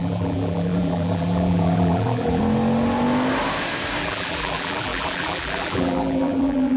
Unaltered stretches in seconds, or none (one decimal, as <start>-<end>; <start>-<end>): 2.4-4.0